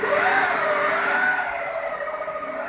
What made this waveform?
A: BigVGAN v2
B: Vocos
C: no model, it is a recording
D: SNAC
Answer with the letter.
C